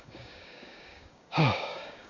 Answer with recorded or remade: remade